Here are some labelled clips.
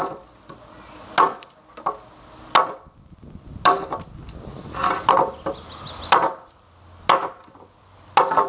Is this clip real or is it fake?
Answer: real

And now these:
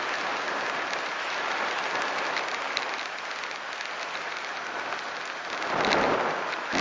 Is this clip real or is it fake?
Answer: real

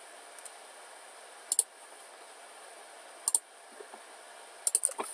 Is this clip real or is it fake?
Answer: real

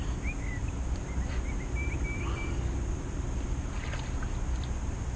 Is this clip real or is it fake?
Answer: real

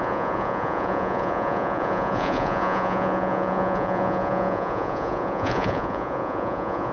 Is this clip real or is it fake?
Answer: fake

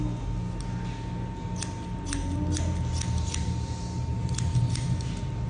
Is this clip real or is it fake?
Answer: real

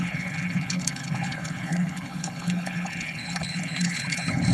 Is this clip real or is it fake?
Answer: fake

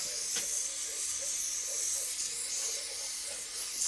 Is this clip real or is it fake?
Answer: real